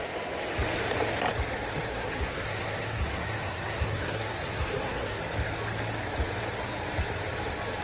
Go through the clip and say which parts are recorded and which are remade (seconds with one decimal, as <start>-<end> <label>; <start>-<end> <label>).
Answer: 0.0-1.9 recorded; 1.9-5.2 remade; 5.2-7.8 recorded